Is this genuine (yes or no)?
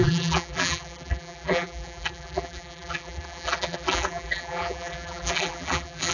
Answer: no